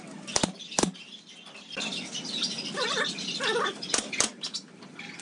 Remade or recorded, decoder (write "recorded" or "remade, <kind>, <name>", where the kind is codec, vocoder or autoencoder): recorded